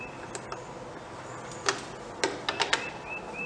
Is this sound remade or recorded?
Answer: recorded